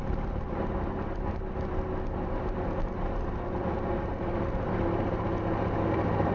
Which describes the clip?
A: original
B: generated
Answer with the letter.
A